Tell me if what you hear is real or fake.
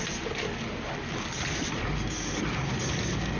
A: real